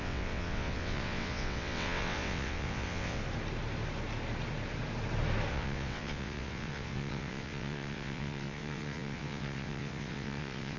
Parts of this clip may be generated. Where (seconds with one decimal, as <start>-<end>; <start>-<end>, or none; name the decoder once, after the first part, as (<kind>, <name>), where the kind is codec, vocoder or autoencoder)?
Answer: 0.0-3.2 (vocoder, WaveNeXt); 5.5-10.8